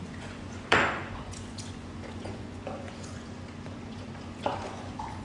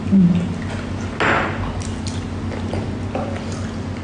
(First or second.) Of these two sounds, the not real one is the first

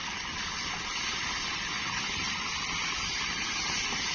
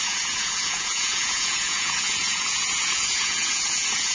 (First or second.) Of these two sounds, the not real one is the second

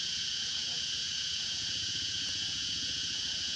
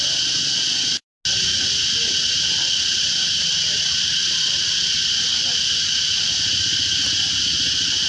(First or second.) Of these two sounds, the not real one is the first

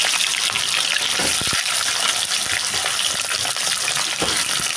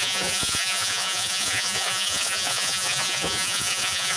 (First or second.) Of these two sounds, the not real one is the second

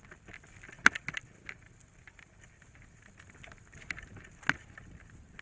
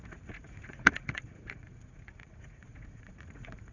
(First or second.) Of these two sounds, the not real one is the second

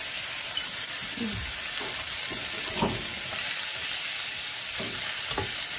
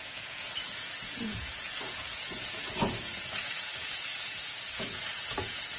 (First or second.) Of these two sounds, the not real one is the second